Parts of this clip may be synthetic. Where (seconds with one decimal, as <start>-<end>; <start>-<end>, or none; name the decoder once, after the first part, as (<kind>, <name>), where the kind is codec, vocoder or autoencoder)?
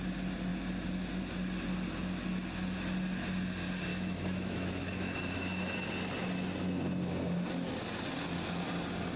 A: 3.9-5.9 (autoencoder, DAC-VAE)